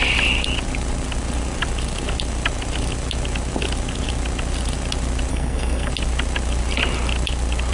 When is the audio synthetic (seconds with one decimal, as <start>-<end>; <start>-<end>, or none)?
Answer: 5.3-5.9